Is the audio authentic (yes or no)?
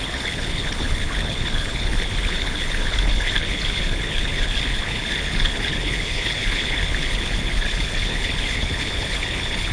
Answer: no